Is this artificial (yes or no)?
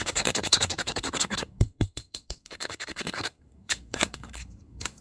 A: yes